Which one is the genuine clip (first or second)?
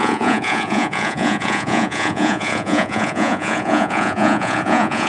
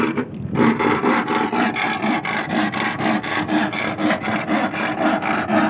second